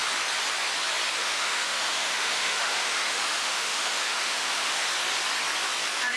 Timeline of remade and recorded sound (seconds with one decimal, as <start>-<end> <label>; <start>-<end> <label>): 0.0-1.2 recorded; 1.2-4.9 remade; 4.9-6.2 recorded